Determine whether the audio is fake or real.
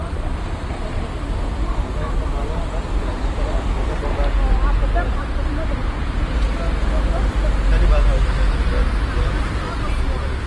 real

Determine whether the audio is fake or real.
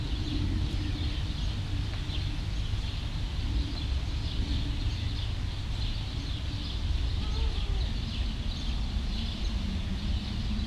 real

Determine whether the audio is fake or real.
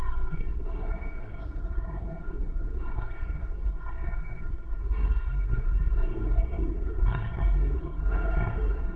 fake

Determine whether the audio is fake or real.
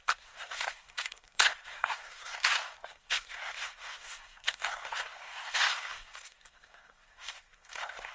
fake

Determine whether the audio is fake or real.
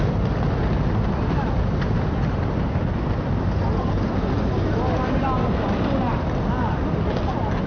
real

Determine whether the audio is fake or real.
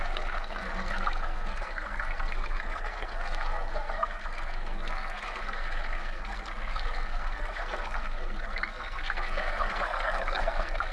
fake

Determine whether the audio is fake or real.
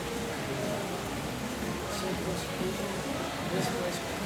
real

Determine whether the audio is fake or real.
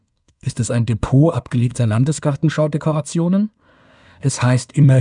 fake